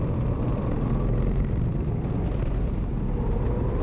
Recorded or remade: recorded